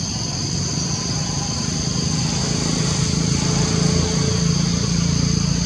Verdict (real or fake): real